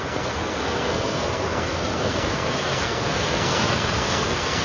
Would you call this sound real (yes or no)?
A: no